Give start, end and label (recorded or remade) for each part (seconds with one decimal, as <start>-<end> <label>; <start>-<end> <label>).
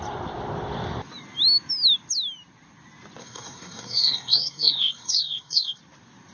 0.0-3.2 recorded; 3.2-5.8 remade; 5.8-6.3 recorded